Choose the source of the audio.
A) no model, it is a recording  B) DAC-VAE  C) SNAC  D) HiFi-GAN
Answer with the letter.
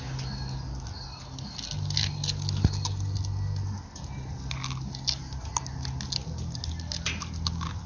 A